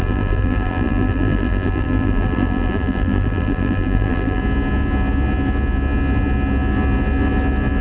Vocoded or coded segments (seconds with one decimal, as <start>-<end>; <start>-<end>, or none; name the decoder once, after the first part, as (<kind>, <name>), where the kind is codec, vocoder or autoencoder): 0.0-4.4 (vocoder, BigVGAN v2)